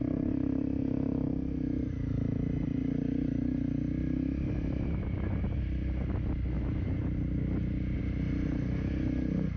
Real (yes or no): yes